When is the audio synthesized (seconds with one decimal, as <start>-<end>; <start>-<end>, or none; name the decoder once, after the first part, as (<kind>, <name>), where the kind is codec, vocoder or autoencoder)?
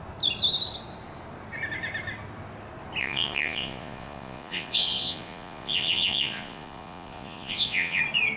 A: 3.0-8.0 (vocoder, Vocos)